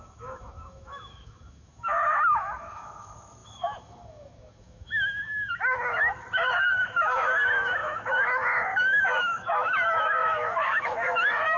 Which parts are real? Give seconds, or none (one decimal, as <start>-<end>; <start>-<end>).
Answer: none